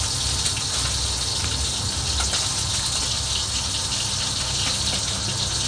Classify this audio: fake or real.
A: real